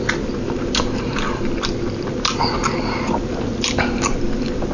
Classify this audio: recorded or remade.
recorded